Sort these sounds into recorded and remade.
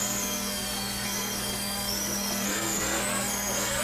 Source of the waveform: remade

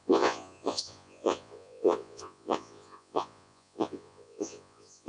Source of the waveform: remade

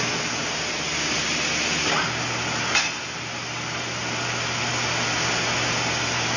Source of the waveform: recorded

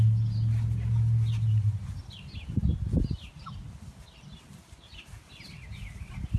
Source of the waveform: recorded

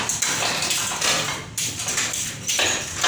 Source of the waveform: recorded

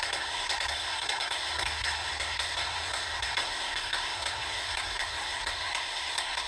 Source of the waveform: remade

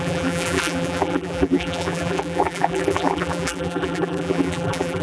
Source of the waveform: remade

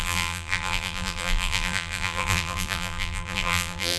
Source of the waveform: remade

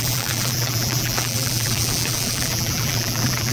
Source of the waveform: remade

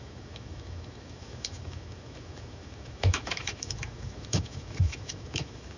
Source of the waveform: remade